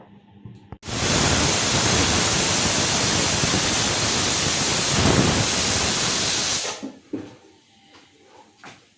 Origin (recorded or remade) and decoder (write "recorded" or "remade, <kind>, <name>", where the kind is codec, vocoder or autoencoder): recorded